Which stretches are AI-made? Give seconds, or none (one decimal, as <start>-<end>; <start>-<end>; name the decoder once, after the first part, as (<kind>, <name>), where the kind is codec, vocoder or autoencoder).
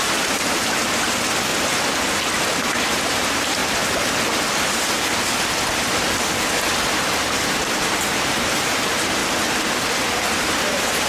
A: 0.0-1.5 (vocoder, BigVGAN v2); 2.5-3.6; 6.9-9.2; 10.4-11.1